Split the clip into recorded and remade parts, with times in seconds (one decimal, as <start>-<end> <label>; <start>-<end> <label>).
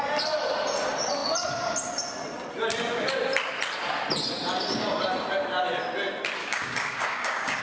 0.0-6.4 recorded; 6.4-7.6 remade